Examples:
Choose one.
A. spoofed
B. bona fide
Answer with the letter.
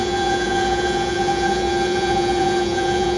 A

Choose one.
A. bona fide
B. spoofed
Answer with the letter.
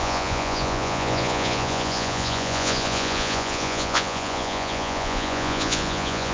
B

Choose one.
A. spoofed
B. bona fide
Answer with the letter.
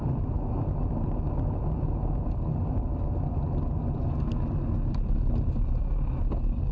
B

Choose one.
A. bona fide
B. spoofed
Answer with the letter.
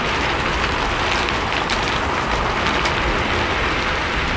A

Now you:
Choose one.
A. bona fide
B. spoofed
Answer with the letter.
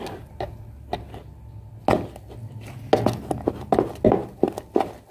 A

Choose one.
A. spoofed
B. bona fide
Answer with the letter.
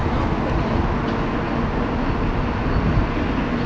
B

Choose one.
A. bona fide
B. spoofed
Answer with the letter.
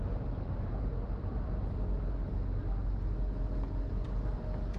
A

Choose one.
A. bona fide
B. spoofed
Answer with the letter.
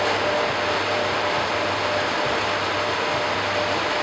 A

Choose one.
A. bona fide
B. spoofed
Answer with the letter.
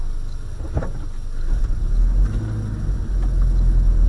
A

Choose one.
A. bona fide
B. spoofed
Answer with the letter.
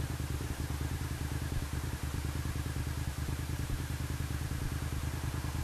A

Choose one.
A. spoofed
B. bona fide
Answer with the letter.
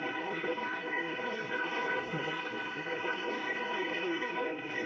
A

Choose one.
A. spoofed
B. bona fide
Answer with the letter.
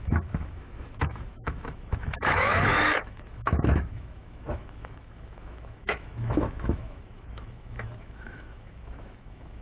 A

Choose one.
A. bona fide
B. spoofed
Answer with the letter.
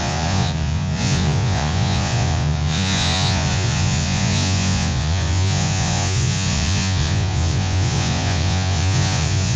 B